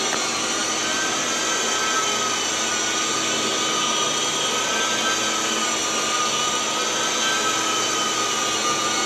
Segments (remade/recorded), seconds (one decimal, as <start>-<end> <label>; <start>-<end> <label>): 0.0-0.6 recorded; 0.6-1.4 remade; 1.4-9.1 recorded